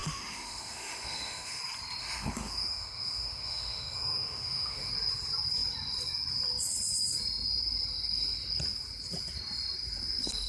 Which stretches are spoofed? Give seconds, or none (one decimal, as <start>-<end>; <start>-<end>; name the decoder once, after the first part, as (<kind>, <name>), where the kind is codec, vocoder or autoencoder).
0.0-1.6 (autoencoder, DAC-VAE); 2.0-4.9